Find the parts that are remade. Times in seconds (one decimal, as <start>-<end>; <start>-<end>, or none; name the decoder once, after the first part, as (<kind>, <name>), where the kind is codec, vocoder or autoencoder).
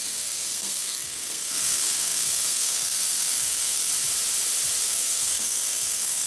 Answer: 0.0-3.9 (codec, SNAC); 4.8-6.3